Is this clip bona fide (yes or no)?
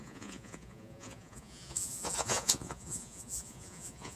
no